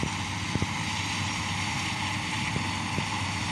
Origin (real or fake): real